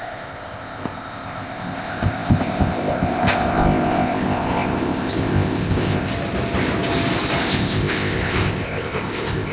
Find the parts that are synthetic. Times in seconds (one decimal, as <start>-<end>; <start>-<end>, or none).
0.0-6.1; 7.4-9.5